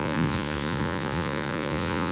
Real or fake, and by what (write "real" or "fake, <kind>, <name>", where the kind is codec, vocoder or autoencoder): fake, vocoder, Vocos